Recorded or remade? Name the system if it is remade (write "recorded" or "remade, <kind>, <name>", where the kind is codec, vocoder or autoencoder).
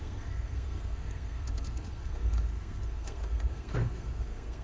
remade, codec, SNAC